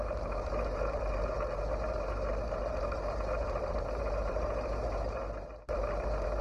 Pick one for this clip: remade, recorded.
remade